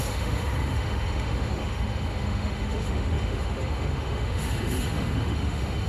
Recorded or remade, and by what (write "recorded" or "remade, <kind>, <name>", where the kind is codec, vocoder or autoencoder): remade, autoencoder, DAC-VAE